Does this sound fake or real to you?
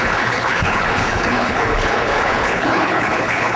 fake